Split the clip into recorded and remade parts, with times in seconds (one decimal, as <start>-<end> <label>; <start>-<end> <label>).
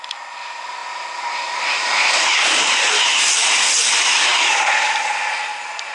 0.0-5.9 recorded